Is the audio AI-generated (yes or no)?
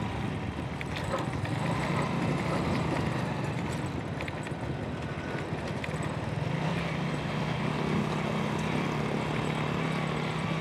no